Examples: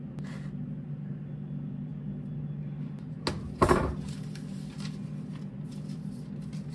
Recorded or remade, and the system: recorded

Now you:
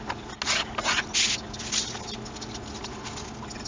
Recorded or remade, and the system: recorded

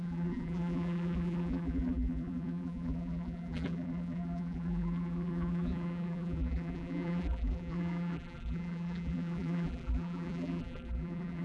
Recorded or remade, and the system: remade, vocoder, BigVGAN v2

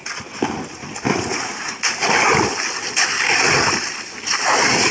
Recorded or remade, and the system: recorded